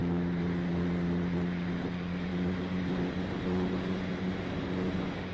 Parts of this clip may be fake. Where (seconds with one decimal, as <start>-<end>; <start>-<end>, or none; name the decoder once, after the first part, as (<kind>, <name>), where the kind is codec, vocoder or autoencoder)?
none